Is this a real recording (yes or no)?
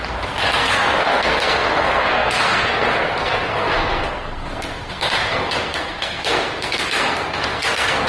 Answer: no